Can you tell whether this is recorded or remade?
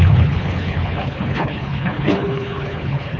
remade